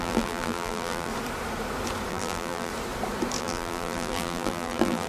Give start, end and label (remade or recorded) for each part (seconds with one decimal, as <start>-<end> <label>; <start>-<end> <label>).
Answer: 0.0-1.1 remade; 1.1-2.1 recorded; 2.1-2.7 remade; 2.7-3.4 recorded; 3.4-5.1 remade